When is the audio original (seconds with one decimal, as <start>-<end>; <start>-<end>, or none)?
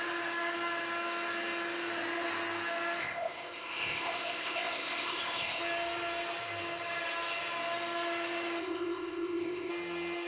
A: 0.0-3.0; 5.6-8.6; 9.7-10.3